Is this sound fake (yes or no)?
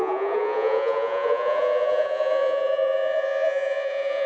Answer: yes